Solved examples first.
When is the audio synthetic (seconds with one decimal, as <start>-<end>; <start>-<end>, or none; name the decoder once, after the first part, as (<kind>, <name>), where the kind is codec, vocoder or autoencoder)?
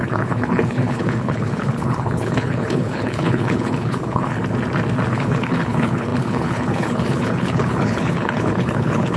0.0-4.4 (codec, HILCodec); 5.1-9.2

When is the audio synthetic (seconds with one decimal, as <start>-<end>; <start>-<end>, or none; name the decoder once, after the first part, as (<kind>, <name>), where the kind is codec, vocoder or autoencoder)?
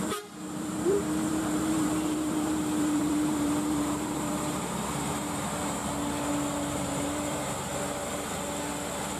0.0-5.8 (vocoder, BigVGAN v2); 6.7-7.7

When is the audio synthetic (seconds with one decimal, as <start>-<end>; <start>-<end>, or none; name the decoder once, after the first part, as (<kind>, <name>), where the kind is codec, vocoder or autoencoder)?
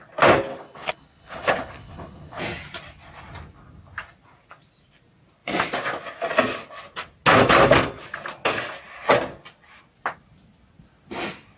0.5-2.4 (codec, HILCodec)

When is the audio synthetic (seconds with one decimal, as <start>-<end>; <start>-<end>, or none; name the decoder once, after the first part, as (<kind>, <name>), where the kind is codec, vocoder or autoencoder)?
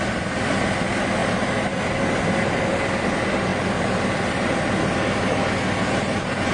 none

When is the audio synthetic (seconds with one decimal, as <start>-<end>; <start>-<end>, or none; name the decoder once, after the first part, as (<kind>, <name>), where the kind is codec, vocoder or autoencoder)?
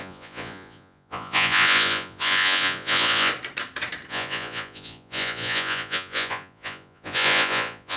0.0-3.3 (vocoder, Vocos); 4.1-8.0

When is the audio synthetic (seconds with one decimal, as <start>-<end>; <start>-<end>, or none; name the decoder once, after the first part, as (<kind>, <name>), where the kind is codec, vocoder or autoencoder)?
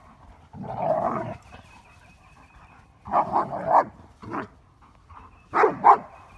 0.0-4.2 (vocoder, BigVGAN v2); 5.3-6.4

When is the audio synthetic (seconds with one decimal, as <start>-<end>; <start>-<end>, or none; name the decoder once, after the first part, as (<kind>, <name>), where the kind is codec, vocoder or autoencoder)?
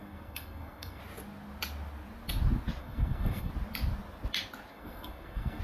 0.0-1.0 (codec, SNAC); 2.8-3.5; 4.7-5.6